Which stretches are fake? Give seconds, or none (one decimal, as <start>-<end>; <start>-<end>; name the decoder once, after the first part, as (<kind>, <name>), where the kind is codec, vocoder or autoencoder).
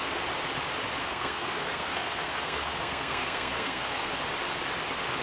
1.0-4.1 (codec, SNAC)